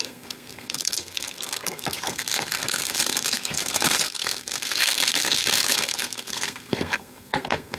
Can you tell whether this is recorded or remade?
remade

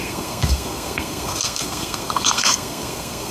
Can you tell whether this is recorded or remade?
remade